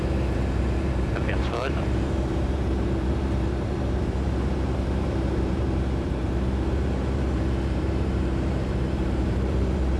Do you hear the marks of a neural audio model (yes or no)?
yes